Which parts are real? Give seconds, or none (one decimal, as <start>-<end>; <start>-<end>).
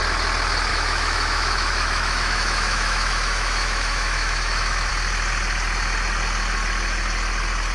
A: 0.0-0.7; 4.9-7.7